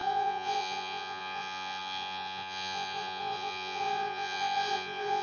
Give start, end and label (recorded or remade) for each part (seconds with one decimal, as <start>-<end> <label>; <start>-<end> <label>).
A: 0.0-5.2 remade